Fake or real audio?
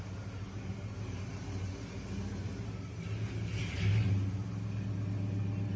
real